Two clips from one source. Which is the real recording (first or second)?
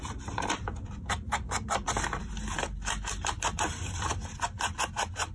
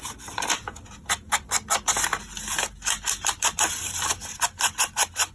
second